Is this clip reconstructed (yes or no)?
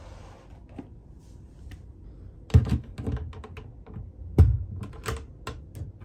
no